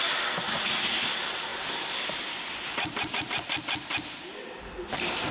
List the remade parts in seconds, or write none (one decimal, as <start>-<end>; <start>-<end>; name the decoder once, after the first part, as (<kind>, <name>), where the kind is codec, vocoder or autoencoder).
1.5-4.7 (vocoder, BigVGAN v2)

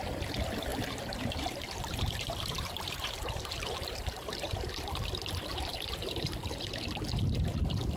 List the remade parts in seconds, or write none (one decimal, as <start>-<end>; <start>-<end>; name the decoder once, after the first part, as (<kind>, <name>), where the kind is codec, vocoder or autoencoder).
0.7-4.7 (vocoder, BigVGAN v2); 5.5-6.7

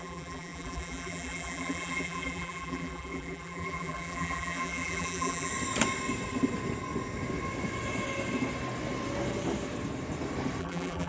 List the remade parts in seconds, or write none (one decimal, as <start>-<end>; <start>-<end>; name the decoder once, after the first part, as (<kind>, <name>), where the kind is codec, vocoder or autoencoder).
0.0-5.5 (vocoder, BigVGAN v2); 10.6-11.1

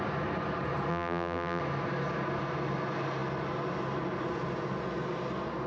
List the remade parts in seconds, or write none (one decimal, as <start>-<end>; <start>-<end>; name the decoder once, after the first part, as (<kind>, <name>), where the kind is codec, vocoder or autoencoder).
0.9-1.6 (vocoder, BigVGAN v2)

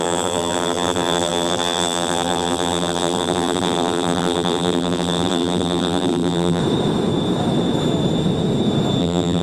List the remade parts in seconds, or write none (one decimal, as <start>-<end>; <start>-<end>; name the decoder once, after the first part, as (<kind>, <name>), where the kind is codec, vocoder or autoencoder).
0.0-6.6 (vocoder, BigVGAN v2); 9.0-9.4

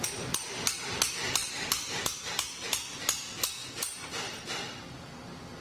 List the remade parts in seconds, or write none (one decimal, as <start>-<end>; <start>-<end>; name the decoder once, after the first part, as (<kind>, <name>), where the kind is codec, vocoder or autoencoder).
1.4-2.2 (vocoder, BigVGAN v2); 3.6-5.1

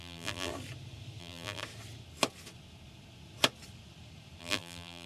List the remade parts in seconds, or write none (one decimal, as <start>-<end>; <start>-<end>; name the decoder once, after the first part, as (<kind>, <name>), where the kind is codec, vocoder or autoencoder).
0.0-0.5 (vocoder, BigVGAN v2); 1.2-1.6; 4.4-5.1

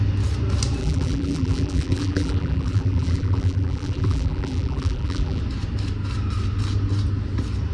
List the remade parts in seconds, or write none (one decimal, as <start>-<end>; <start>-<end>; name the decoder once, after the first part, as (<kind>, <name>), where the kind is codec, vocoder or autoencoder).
0.8-5.4 (vocoder, BigVGAN v2)